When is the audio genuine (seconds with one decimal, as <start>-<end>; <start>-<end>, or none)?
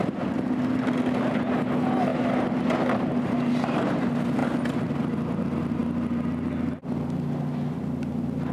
0.0-8.5